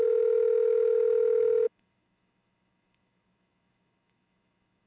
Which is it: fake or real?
fake